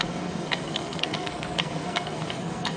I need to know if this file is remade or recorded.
remade